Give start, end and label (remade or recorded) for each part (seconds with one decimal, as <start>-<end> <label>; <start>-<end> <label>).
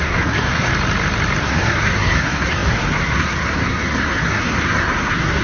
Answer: 0.0-0.7 remade; 0.7-1.4 recorded; 1.4-5.4 remade